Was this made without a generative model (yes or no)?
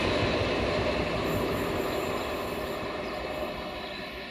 yes